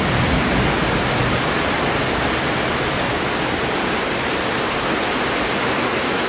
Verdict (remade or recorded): recorded